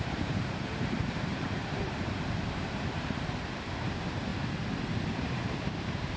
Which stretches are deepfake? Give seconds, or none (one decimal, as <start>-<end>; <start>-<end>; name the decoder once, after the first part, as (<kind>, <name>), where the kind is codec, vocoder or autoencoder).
0.0-1.8 (vocoder, BigVGAN v2); 2.7-4.3; 5.3-6.2